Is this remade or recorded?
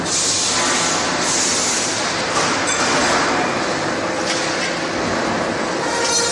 recorded